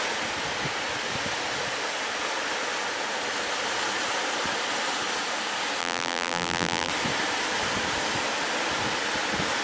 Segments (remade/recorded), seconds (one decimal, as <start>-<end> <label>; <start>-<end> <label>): 0.0-5.8 recorded; 5.8-6.9 remade; 6.9-9.6 recorded